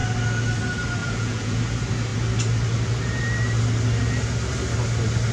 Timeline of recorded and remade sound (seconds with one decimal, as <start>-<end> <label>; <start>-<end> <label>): 0.0-1.0 recorded; 1.0-1.6 remade; 1.6-5.3 recorded